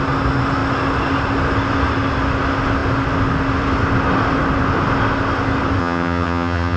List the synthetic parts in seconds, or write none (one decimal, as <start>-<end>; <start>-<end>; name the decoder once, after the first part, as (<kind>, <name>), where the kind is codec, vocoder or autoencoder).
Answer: 5.8-6.8 (vocoder, HiFi-GAN)